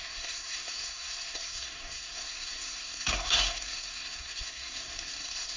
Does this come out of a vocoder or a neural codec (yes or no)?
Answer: yes